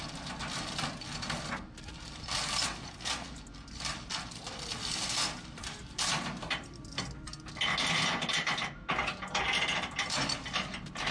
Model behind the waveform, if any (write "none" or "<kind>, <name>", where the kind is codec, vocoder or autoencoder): none